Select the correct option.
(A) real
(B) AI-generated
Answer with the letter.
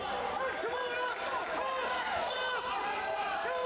A